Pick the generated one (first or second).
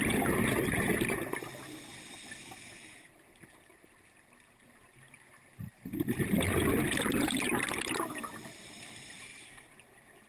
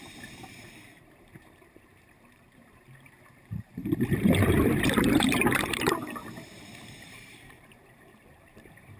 second